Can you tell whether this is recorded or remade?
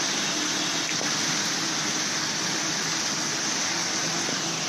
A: recorded